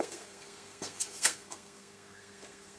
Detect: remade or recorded remade